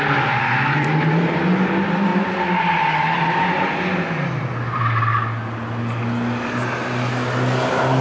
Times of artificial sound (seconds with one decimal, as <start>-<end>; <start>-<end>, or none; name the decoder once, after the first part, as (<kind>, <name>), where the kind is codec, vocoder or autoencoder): none